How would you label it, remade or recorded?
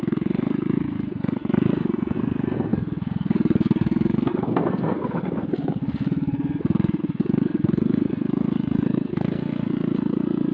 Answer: remade